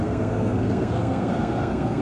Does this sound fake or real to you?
fake